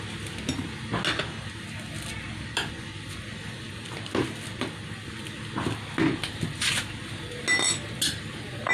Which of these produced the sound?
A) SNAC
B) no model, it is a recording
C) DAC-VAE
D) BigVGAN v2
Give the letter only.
B